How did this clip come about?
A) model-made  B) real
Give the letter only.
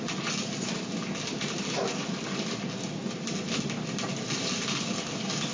B